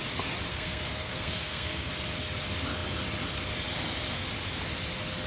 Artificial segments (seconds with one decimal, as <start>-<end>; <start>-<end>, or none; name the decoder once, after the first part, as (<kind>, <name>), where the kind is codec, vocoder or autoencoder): 0.5-1.9 (codec, SNAC)